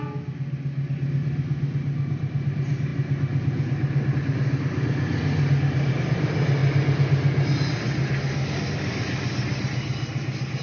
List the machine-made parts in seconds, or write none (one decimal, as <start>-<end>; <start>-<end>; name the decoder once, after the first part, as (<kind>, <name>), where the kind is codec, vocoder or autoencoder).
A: none